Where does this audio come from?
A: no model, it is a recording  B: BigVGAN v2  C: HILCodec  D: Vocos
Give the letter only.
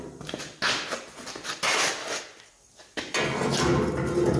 A